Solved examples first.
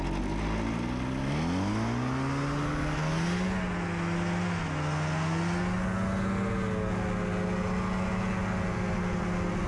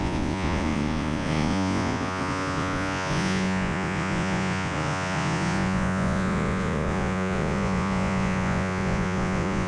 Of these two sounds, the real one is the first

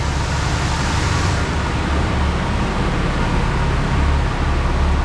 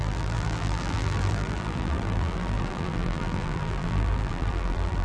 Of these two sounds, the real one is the first